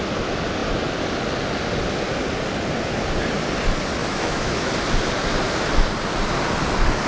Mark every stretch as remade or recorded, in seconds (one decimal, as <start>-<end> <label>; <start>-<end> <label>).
0.0-4.0 recorded; 4.0-4.7 remade; 4.7-7.1 recorded